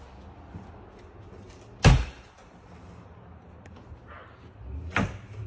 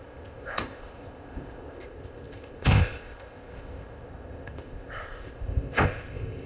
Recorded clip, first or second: first